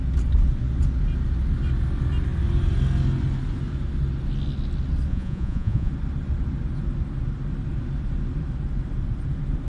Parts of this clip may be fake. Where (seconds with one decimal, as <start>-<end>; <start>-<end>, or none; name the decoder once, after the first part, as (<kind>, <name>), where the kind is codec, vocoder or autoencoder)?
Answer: 5.1-5.9 (vocoder, Vocos)